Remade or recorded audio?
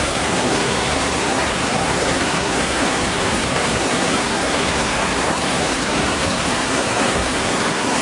remade